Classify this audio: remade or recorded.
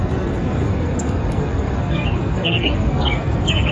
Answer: remade